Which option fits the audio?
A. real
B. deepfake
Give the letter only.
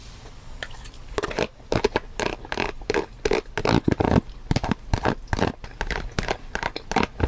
B